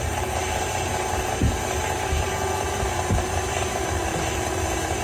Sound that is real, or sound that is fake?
fake